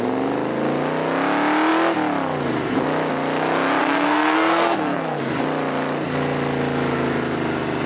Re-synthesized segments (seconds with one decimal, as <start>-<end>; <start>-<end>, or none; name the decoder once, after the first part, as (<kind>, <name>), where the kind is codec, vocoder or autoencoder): 3.8-5.3 (codec, SNAC)